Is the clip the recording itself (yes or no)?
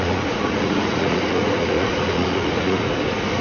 no